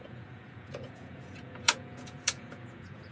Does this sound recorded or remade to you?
remade